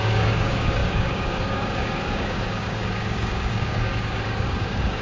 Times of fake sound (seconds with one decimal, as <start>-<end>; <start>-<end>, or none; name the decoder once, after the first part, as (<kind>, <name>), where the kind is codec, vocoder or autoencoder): 0.0-5.0 (codec, DAC)